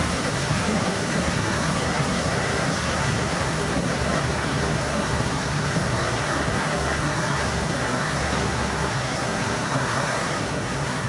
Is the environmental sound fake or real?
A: fake